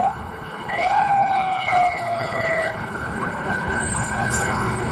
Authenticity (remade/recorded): remade